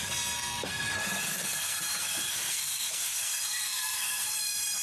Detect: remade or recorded remade